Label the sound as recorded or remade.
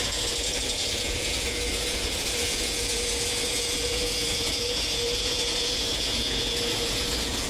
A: remade